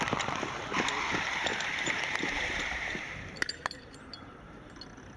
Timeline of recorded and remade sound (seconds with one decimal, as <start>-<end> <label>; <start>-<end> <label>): 0.0-1.5 recorded; 1.5-4.6 remade; 4.6-5.2 recorded